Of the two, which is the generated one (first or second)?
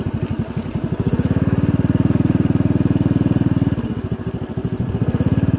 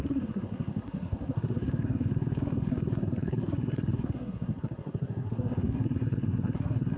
second